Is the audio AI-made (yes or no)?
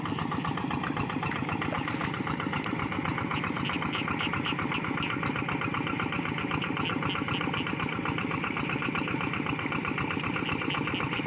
no